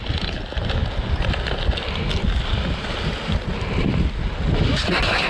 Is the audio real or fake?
real